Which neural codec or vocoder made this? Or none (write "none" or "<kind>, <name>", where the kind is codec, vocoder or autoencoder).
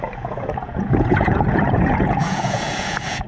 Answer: vocoder, Vocos